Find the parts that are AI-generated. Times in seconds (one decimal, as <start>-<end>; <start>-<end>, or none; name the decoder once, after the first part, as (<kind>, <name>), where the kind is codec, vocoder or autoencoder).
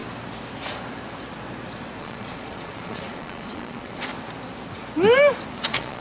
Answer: 2.0-4.1 (vocoder, Vocos); 5.5-6.0